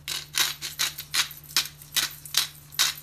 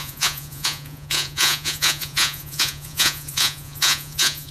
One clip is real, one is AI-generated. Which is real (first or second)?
first